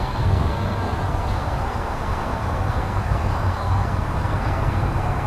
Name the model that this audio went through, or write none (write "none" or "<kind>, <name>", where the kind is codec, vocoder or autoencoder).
codec, SNAC